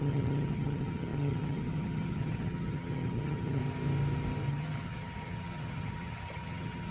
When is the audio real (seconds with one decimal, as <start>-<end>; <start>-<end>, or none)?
3.6-4.5